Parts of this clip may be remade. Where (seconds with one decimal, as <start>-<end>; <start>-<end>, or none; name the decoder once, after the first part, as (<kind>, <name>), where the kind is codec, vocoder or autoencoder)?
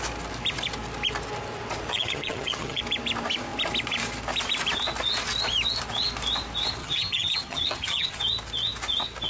1.9-2.8 (vocoder, HiFi-GAN); 6.8-8.2